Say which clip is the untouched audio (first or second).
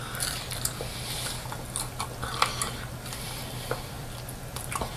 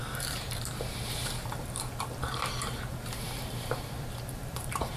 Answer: first